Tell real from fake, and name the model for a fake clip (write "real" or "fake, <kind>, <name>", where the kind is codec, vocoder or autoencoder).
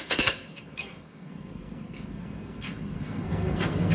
fake, codec, SNAC